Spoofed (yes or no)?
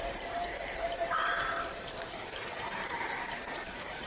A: yes